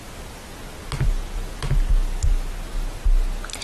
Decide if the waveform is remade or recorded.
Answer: recorded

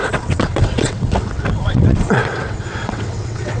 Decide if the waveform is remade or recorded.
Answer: remade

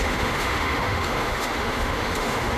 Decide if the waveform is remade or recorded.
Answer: remade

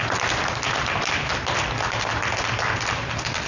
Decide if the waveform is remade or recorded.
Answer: recorded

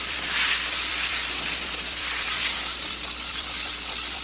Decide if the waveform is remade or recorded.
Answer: remade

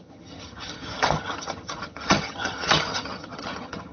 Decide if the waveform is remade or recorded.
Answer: remade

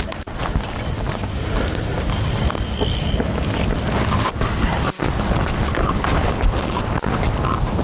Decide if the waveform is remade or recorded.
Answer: recorded